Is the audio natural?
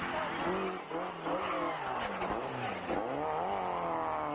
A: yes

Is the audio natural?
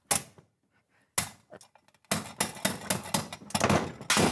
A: yes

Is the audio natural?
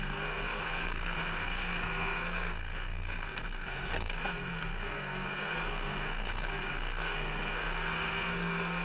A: no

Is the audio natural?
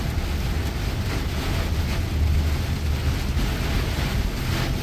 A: yes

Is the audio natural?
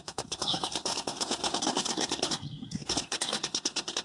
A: no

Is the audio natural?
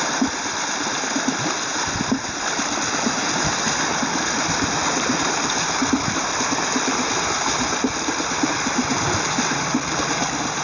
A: yes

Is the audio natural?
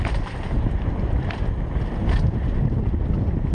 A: yes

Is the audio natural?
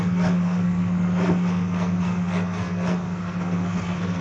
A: no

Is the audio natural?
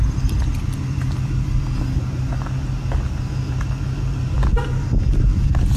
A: yes